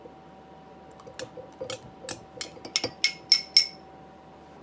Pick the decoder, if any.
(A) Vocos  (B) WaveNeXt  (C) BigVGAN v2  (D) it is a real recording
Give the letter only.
D